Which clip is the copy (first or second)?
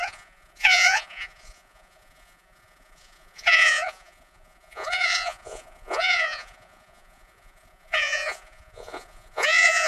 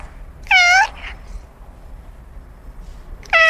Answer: first